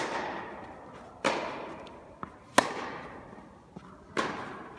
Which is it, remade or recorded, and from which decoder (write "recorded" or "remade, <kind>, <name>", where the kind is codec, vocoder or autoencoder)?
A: recorded